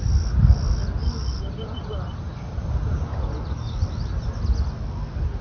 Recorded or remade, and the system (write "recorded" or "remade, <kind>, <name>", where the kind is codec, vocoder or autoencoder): recorded